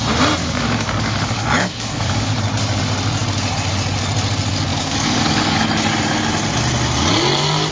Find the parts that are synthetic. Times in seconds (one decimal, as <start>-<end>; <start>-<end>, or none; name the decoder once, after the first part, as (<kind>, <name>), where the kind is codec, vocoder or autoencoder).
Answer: 0.4-2.4 (codec, DAC); 4.7-5.6